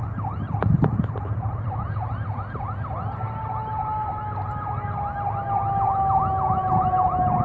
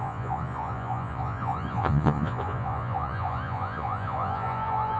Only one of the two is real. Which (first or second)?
first